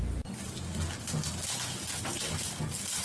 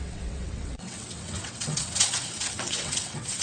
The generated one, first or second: second